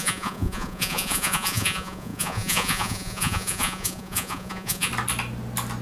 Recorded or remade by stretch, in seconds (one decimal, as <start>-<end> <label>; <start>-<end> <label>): 0.0-4.9 remade; 4.9-5.8 recorded